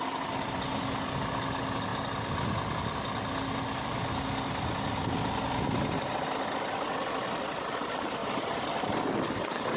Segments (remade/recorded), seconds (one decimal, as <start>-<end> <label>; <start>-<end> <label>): 0.0-8.2 recorded; 8.2-9.1 remade; 9.1-9.8 recorded